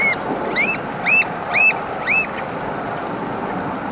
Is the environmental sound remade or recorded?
recorded